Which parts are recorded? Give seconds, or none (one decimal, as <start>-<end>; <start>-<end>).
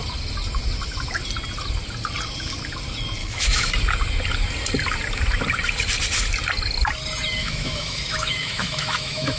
0.0-3.2; 3.7-7.4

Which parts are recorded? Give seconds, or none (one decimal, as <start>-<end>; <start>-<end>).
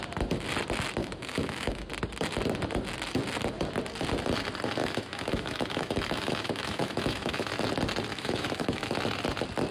0.0-1.0; 1.9-4.8; 7.5-8.1; 8.9-9.7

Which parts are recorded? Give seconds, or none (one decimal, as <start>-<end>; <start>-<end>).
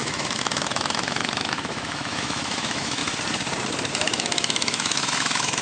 3.0-3.9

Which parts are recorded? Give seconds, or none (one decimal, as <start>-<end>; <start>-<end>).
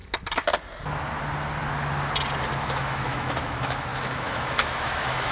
0.0-2.6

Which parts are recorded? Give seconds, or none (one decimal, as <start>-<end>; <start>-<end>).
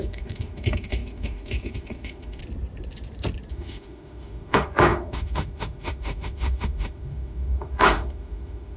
2.4-3.5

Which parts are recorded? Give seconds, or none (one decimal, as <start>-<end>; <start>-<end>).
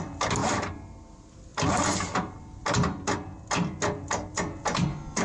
0.0-5.2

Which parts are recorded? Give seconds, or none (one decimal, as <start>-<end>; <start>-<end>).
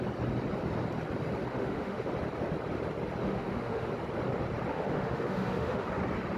0.0-1.5; 2.1-3.2; 3.9-4.7; 5.9-6.4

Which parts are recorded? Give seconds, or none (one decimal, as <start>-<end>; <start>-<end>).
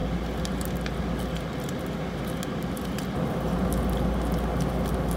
0.0-5.2